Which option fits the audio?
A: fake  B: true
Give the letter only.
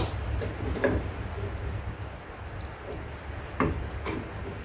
B